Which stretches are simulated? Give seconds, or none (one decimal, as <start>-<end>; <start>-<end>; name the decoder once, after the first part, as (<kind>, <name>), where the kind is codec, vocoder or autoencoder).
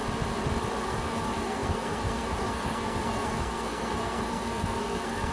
0.8-5.3 (codec, SNAC)